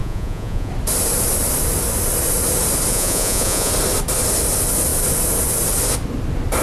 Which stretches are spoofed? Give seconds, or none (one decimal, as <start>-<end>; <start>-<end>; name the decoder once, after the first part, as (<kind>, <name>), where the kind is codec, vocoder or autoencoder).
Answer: 0.0-0.7 (vocoder, Vocos); 2.9-3.7